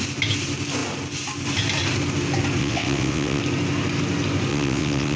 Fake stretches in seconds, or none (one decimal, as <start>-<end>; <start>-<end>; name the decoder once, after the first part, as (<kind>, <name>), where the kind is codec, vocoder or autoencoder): 2.6-3.4 (vocoder, WaveNeXt); 4.5-5.2

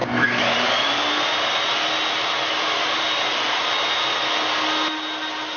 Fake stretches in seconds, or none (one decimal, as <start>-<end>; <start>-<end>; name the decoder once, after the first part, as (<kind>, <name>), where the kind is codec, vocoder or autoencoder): none

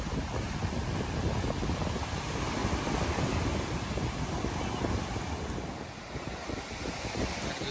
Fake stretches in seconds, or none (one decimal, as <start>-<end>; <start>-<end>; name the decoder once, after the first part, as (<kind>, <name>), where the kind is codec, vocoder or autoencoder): none